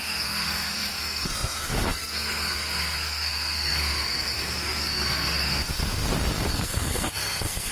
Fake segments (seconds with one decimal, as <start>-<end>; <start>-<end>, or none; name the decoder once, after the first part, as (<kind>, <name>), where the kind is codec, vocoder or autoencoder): 0.0-6.0 (codec, SNAC); 6.5-7.7